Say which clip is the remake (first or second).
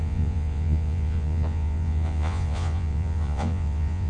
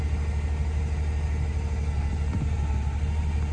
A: first